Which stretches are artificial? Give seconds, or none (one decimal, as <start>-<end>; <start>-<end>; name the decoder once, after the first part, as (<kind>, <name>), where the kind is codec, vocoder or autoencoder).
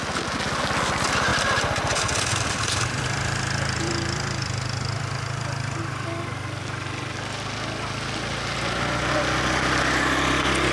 1.3-5.8 (vocoder, BigVGAN v2)